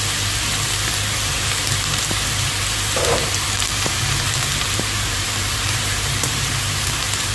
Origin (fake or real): fake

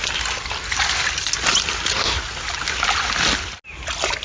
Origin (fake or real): real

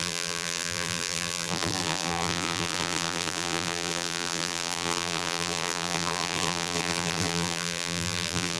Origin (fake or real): fake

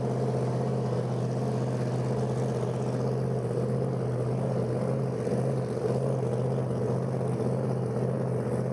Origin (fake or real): real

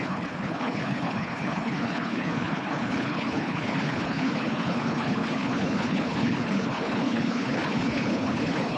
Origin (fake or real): fake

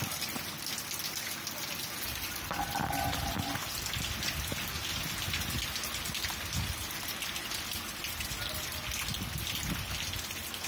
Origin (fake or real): real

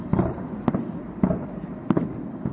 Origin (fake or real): real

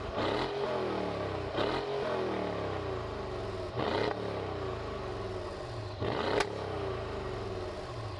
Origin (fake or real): real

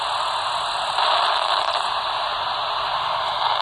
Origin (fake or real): real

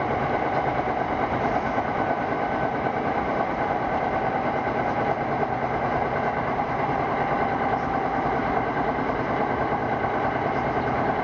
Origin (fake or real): real